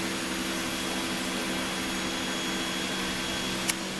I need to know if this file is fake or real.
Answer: real